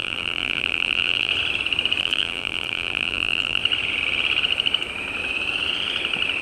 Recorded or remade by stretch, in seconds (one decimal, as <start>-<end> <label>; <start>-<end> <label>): 0.0-1.3 remade; 1.3-2.0 recorded; 2.0-3.6 remade; 3.6-6.4 recorded